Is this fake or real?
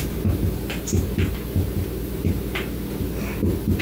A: real